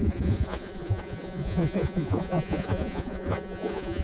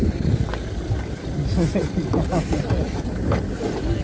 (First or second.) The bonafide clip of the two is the second